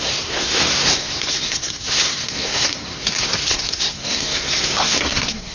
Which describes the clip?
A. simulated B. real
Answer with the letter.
A